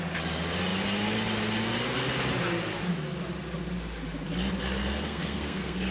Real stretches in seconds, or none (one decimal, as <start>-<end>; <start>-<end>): 0.0-4.8